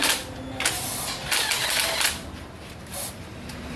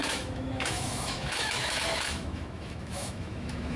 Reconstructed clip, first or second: second